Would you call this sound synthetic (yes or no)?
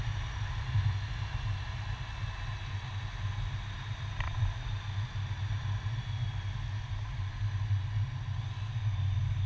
no